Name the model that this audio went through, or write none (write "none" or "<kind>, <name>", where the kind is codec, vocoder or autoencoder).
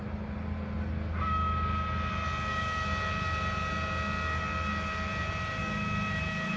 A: none